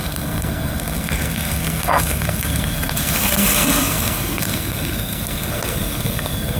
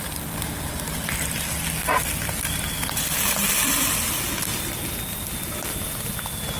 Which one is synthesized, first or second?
first